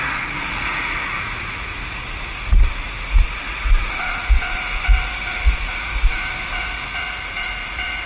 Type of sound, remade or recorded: remade